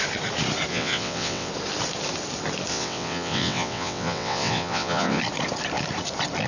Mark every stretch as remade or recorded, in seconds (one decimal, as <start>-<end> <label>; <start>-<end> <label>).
0.0-0.7 recorded; 0.7-1.5 remade; 1.5-2.7 recorded; 2.7-5.2 remade; 5.2-6.5 recorded